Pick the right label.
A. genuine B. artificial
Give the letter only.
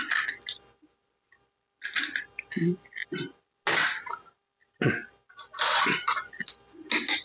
A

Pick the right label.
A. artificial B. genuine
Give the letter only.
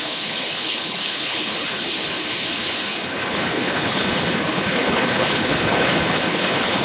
A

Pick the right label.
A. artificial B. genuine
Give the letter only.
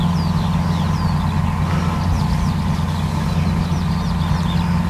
B